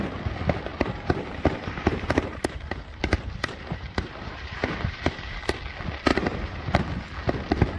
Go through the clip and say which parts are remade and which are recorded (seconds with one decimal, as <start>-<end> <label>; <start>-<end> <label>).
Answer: 0.0-0.7 recorded; 0.7-5.4 remade; 5.4-6.1 recorded; 6.1-6.8 remade; 6.8-7.8 recorded